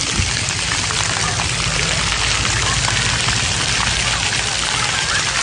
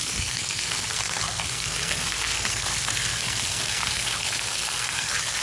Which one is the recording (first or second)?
first